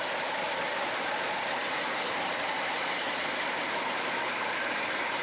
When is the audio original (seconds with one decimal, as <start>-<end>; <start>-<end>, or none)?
0.0-1.6; 3.8-5.2